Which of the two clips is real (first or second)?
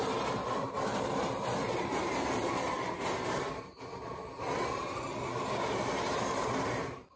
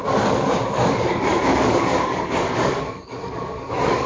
first